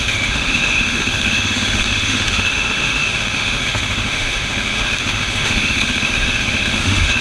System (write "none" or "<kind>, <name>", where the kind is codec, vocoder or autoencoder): autoencoder, DAC-VAE